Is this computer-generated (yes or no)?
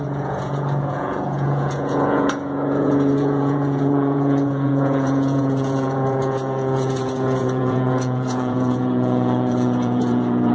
yes